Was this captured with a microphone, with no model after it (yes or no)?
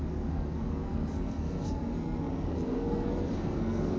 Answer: no